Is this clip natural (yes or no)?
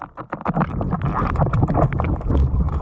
yes